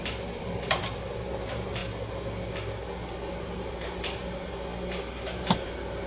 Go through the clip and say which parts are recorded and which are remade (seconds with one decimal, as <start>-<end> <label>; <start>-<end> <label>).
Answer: 0.0-1.8 remade; 1.8-3.3 recorded; 3.3-4.7 remade; 4.7-5.4 recorded; 5.4-6.1 remade